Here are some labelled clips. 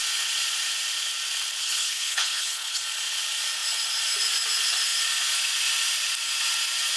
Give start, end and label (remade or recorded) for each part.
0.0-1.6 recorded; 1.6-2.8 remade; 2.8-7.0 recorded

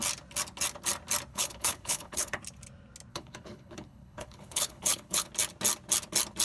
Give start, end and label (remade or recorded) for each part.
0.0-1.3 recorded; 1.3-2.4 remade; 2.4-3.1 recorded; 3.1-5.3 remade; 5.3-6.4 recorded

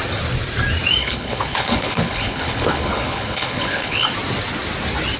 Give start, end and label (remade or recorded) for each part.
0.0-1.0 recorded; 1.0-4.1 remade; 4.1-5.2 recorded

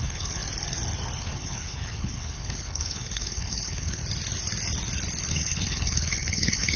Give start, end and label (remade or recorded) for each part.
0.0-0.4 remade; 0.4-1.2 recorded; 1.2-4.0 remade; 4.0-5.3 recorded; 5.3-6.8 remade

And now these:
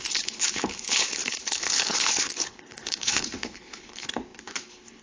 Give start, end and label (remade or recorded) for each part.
0.0-5.0 remade